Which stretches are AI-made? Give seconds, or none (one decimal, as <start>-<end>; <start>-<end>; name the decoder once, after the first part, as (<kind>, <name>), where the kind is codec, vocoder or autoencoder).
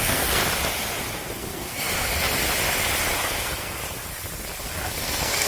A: 0.0-0.4 (codec, SNAC); 1.2-2.1; 3.2-3.8; 4.6-5.5